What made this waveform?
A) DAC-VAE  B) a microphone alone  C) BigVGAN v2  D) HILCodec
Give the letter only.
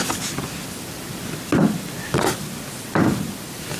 B